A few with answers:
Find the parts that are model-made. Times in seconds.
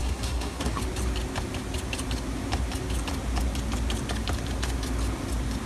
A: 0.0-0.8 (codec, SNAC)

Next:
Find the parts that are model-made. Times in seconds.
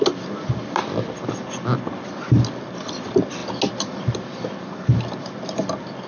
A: none